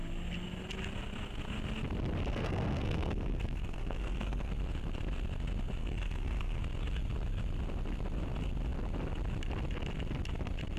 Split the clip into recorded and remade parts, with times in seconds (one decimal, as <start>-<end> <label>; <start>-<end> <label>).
0.0-2.3 recorded; 2.3-4.5 remade; 4.5-5.8 recorded; 5.8-6.6 remade; 6.6-10.8 recorded